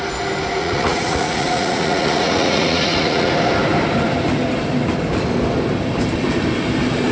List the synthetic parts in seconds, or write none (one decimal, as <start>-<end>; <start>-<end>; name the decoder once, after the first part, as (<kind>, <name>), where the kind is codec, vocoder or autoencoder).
0.6-3.3 (vocoder, Vocos)